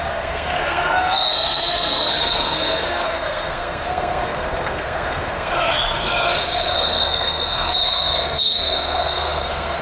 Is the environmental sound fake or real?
fake